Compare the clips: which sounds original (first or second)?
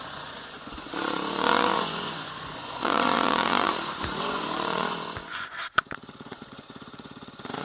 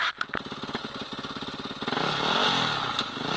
second